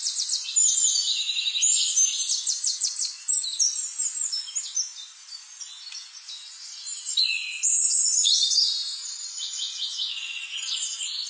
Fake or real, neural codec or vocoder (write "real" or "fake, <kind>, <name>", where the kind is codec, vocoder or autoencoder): real